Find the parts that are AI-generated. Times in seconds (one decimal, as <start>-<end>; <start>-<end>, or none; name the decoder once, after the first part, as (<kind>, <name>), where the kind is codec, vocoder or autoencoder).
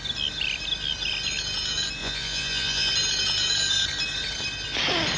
2.0-2.9 (vocoder, Vocos)